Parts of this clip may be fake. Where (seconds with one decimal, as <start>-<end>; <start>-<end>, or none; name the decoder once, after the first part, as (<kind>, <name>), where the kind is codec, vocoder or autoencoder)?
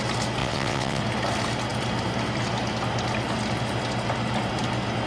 0.4-1.0 (vocoder, WaveNeXt)